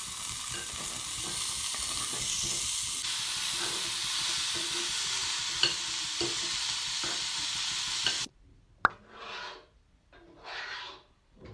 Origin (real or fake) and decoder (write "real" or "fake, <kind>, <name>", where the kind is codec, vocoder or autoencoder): real